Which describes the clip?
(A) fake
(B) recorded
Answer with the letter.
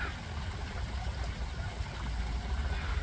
B